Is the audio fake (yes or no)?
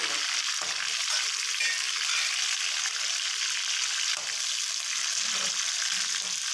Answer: no